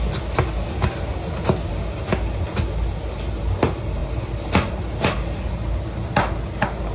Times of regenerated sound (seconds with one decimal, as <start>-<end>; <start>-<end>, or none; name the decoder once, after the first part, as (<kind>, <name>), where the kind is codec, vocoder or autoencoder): none